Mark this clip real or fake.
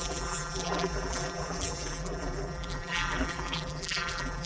fake